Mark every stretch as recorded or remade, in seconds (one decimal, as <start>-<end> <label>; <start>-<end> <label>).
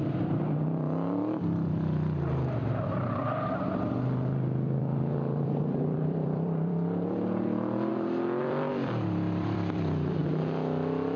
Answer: 0.0-10.2 remade; 10.2-11.2 recorded